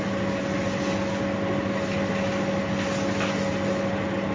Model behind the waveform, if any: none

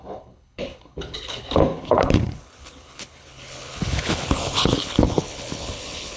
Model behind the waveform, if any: codec, HILCodec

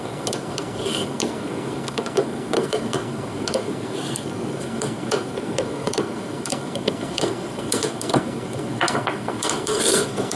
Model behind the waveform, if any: codec, SNAC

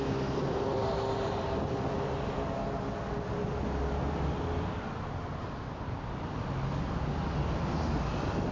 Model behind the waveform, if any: none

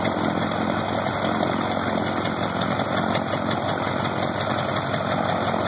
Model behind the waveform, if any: none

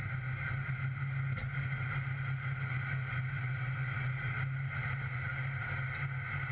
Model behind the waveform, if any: none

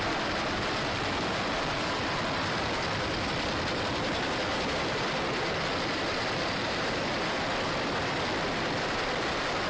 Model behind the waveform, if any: vocoder, BigVGAN v2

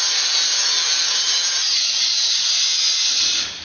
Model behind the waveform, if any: none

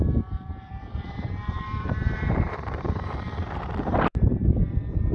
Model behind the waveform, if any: vocoder, BigVGAN v2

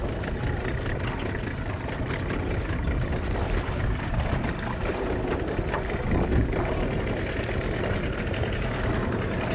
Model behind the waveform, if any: none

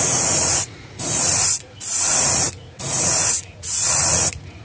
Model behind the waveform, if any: vocoder, Vocos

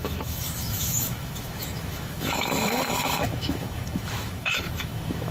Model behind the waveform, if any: autoencoder, DAC-VAE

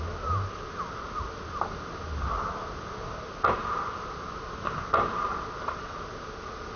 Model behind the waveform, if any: none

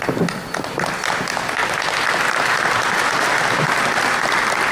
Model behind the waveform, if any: none